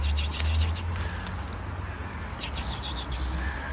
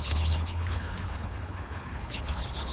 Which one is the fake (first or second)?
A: second